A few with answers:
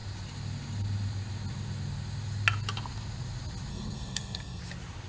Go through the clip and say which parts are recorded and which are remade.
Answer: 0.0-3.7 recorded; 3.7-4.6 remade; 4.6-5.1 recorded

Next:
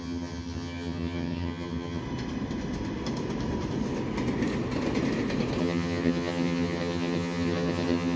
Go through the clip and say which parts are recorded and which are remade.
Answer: 0.0-2.0 remade; 2.0-5.6 recorded; 5.6-8.2 remade